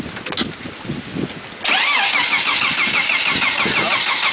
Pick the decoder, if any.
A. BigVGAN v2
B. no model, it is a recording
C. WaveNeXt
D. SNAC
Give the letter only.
B